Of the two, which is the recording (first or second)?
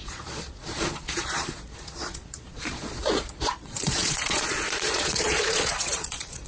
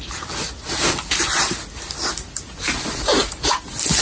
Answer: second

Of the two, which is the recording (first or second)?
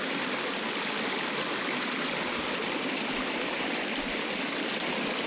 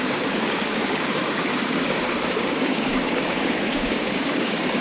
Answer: first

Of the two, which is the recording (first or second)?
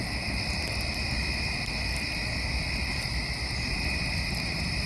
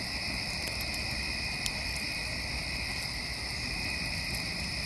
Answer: first